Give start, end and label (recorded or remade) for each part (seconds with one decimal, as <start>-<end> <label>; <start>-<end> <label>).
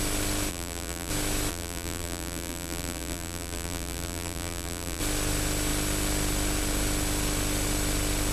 0.0-0.5 recorded; 0.5-1.1 remade; 1.1-1.5 recorded; 1.5-5.0 remade; 5.0-8.3 recorded